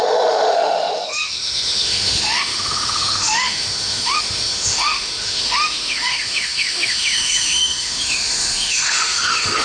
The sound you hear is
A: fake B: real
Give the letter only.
A